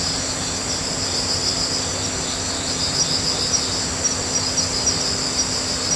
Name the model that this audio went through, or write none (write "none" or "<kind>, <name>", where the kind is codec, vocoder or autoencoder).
none